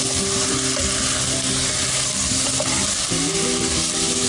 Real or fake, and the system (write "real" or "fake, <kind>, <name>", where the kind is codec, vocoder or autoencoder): real